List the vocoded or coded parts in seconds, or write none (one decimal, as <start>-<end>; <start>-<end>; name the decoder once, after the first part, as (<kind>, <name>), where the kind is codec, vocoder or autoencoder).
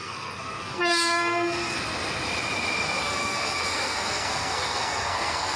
0.0-1.8 (codec, SNAC); 3.0-5.6